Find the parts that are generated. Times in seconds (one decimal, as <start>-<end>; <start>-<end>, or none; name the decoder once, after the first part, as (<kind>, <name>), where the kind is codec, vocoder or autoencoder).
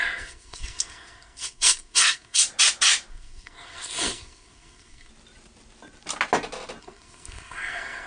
0.0-2.4 (codec, SNAC); 3.1-5.1; 6.8-8.1